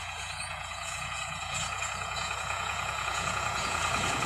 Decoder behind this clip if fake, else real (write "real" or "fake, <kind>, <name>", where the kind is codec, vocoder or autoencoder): fake, vocoder, Vocos